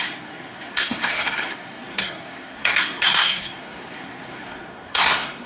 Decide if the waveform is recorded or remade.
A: remade